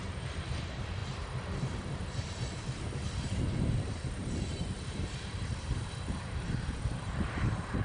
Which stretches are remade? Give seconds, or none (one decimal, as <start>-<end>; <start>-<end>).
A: 0.0-7.8